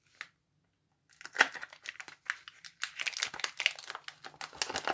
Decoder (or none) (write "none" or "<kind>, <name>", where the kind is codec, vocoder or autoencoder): none